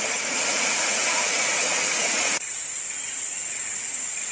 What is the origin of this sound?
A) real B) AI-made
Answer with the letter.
B